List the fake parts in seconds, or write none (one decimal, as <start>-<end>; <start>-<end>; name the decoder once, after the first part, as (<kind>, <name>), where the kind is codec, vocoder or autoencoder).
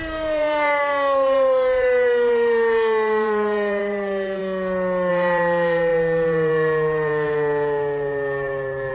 0.0-4.4 (vocoder, BigVGAN v2); 5.1-8.9